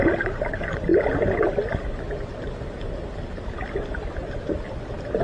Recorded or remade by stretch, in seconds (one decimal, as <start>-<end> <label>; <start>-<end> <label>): 0.0-5.2 recorded